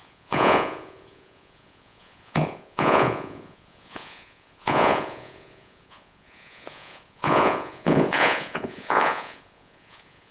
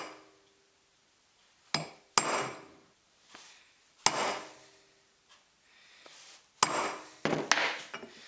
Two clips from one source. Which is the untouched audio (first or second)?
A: second